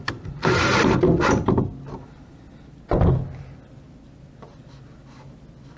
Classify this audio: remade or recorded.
recorded